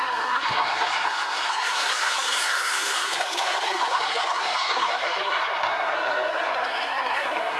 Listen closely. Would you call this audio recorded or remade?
remade